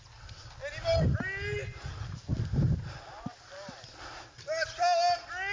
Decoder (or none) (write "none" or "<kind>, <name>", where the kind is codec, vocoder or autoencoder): none